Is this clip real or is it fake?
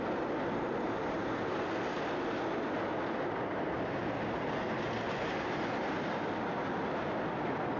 real